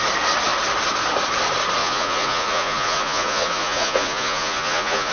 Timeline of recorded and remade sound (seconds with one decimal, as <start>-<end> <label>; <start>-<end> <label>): 0.0-1.8 recorded; 1.8-5.1 remade